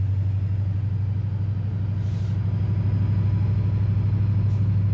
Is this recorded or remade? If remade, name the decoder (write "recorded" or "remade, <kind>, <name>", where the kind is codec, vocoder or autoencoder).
recorded